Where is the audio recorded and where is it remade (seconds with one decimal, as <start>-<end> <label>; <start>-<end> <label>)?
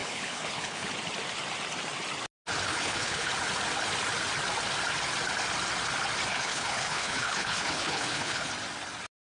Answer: 0.0-0.9 remade; 0.9-2.7 recorded; 2.7-3.3 remade; 3.3-6.3 recorded; 6.3-8.5 remade; 8.5-9.3 recorded